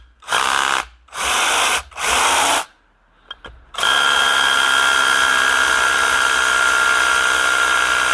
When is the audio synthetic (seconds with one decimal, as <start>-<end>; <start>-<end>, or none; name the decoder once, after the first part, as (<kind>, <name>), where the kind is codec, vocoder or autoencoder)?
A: none